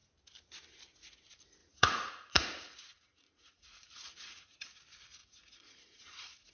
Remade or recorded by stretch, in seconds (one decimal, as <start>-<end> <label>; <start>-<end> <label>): 0.0-1.6 recorded; 1.6-4.8 remade; 4.8-5.2 recorded; 5.2-6.5 remade